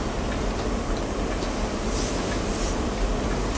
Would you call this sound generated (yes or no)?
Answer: no